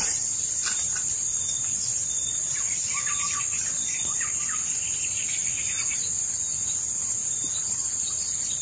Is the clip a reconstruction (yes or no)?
yes